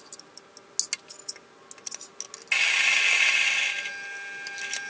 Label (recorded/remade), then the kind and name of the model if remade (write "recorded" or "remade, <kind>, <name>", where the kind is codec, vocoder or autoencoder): recorded